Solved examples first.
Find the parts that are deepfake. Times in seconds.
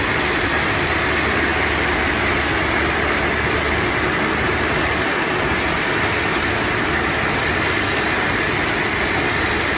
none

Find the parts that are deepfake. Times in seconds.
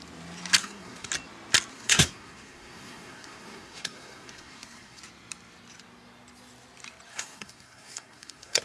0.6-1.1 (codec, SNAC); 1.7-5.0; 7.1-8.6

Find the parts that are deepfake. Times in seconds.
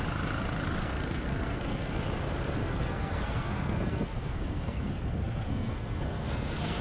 0.8-2.0 (codec, SNAC); 2.6-6.8